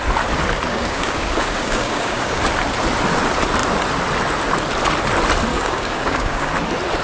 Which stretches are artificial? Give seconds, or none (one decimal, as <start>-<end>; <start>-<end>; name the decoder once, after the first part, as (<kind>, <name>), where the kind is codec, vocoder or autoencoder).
0.7-2.4 (codec, DAC); 5.5-6.5

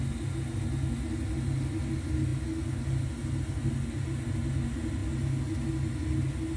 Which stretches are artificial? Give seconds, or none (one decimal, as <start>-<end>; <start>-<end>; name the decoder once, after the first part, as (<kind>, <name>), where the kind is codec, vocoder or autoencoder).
none

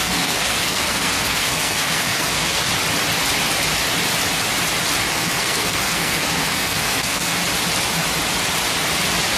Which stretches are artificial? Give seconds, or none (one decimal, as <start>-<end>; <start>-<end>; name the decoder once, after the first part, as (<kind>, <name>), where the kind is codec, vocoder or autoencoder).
0.0-2.7 (codec, SNAC); 5.1-7.4

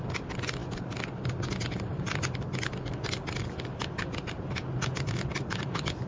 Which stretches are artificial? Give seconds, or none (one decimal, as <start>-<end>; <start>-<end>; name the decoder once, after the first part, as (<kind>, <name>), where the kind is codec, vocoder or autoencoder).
none